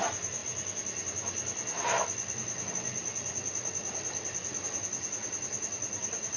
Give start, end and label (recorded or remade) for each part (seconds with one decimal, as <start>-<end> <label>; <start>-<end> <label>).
0.0-6.4 recorded